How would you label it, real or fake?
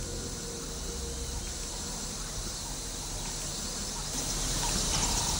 real